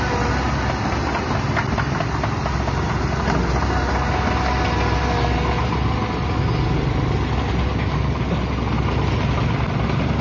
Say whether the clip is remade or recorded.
recorded